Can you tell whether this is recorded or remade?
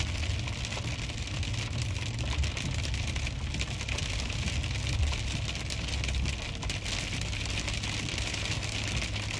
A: recorded